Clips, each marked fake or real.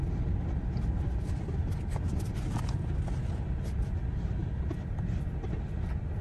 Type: real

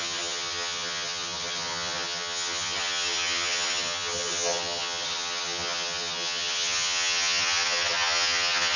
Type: fake